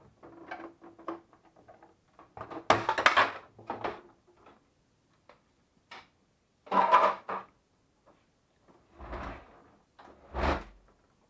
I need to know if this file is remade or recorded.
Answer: recorded